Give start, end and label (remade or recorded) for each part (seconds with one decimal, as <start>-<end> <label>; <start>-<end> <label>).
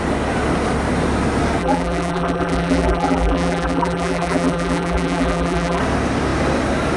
0.0-1.6 recorded; 1.6-5.8 remade; 5.8-7.0 recorded